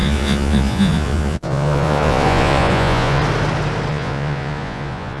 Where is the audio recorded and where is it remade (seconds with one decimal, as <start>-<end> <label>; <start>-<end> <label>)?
0.0-3.2 remade; 3.2-3.9 recorded; 3.9-5.2 remade